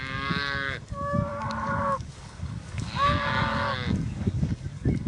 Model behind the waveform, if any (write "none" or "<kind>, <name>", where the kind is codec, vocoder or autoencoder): codec, DAC